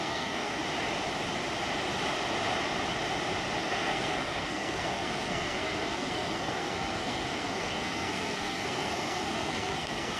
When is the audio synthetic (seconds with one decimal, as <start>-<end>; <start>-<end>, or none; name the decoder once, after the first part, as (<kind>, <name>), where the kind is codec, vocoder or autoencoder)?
0.0-0.6 (codec, SNAC); 3.6-10.2